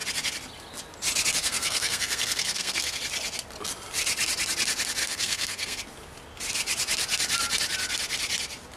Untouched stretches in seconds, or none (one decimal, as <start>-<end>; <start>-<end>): 0.0-1.4; 3.0-5.0; 5.8-8.8